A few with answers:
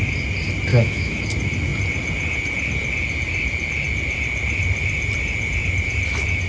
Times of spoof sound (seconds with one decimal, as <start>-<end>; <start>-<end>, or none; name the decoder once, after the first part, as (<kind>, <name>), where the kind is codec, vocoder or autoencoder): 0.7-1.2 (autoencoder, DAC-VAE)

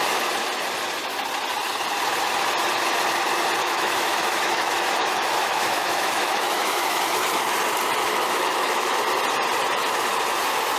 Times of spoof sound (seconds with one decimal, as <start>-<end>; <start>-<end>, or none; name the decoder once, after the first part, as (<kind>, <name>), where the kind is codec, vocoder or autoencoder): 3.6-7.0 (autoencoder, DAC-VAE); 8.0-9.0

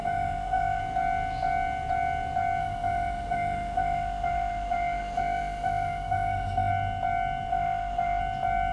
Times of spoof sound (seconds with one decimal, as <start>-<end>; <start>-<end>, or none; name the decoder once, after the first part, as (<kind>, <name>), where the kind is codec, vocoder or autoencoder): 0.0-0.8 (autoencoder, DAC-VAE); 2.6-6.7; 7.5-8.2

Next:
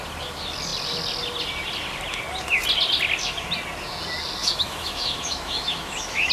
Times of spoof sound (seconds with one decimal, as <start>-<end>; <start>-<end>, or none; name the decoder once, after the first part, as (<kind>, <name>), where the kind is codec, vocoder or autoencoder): 4.4-6.3 (autoencoder, DAC-VAE)

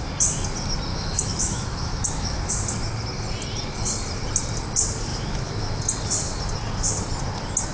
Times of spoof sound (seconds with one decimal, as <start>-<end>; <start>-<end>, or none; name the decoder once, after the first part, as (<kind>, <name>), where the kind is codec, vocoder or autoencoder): 0.9-2.5 (autoencoder, DAC-VAE); 5.1-5.8

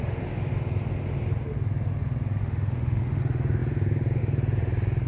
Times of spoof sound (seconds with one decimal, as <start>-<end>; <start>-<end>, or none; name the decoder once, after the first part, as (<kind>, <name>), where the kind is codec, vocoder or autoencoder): 2.4-3.2 (autoencoder, DAC-VAE)